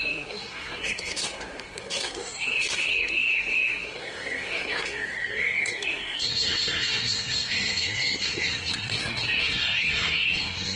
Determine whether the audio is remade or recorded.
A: remade